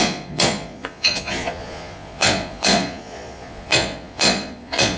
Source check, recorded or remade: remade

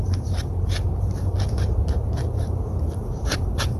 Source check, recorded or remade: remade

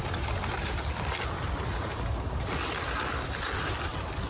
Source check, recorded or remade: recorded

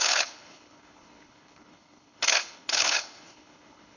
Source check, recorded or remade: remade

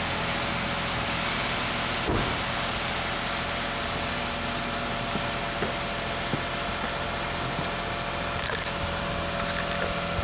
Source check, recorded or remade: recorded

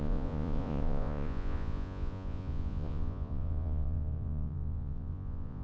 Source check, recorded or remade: remade